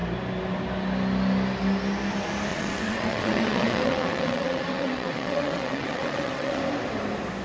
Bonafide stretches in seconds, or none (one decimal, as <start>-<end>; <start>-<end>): 0.0-2.5; 6.6-7.4